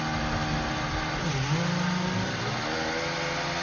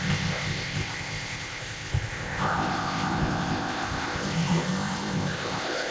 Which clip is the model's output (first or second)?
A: second